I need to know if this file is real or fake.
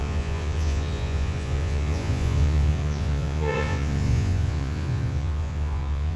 fake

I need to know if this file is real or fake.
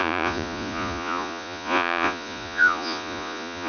fake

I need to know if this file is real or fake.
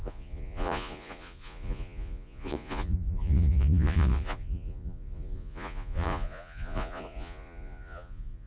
fake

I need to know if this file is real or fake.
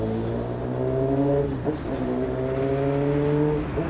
real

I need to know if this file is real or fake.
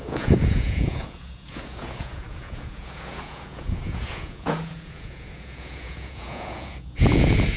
fake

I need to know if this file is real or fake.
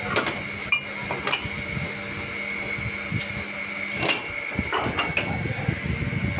real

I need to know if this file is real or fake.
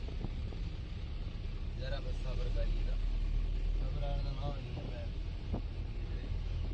real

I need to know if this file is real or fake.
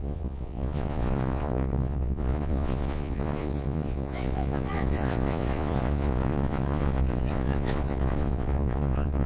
fake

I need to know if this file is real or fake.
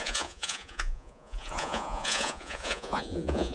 fake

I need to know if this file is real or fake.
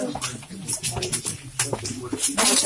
real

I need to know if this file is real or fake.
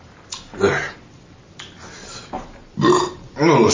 real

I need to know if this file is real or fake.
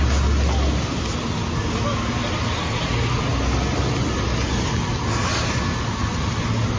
real